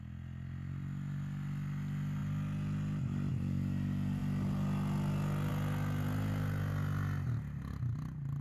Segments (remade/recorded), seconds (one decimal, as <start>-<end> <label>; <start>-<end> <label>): 0.0-8.4 recorded